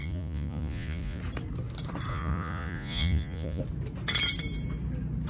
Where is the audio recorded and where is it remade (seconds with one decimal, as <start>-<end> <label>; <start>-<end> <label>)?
0.0-1.2 remade; 1.2-2.1 recorded; 2.1-3.6 remade; 3.6-5.3 recorded